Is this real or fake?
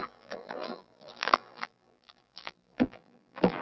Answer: fake